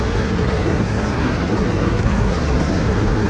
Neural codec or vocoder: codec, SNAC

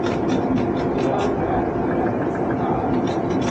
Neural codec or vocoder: vocoder, BigVGAN v2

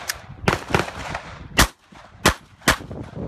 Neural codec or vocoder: none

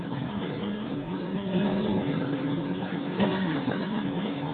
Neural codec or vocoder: codec, SNAC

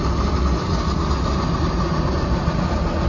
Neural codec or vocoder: none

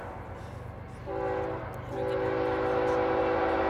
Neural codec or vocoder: none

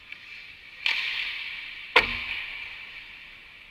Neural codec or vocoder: none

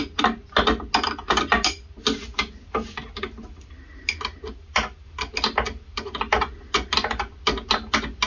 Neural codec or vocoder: none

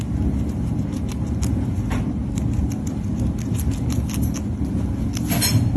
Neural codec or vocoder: none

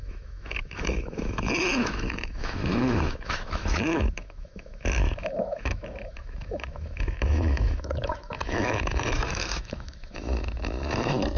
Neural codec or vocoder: autoencoder, DAC-VAE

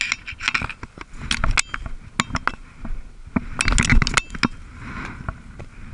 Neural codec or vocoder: none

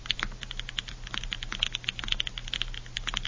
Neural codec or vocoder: none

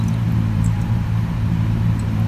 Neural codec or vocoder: vocoder, BigVGAN v2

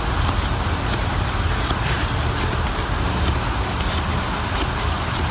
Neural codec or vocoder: none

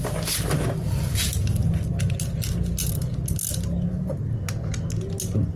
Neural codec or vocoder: none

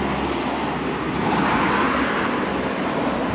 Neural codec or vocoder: none